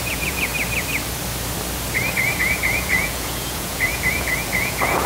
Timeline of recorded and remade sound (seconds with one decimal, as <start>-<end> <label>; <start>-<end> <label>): 0.0-0.5 remade; 0.5-2.4 recorded; 2.4-5.1 remade